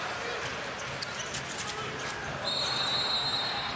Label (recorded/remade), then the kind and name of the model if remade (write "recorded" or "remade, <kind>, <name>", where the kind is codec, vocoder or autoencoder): recorded